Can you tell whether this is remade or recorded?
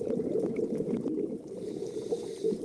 remade